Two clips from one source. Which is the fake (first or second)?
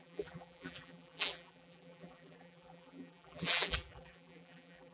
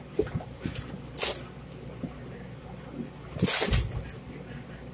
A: first